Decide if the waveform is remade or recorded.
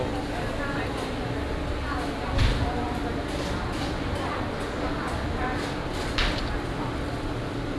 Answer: recorded